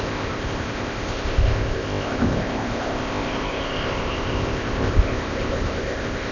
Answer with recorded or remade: remade